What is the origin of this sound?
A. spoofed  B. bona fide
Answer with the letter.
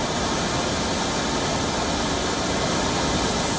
B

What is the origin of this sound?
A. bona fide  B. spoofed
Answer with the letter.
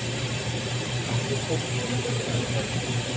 B